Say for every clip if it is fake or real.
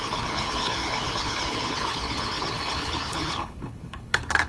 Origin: fake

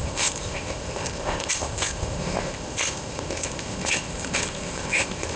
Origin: fake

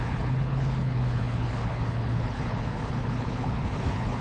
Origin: fake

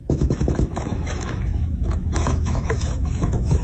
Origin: fake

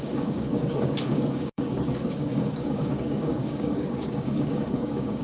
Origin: fake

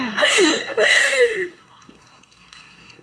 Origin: fake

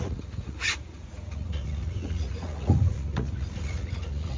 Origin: fake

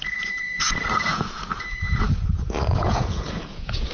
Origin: fake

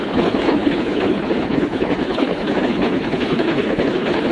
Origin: fake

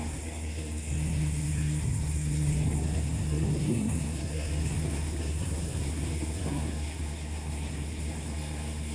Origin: fake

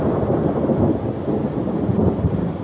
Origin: real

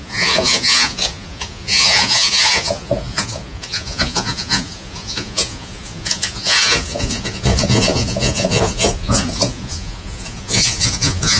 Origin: fake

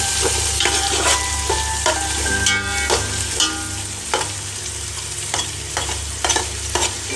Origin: real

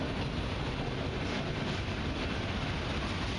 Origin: real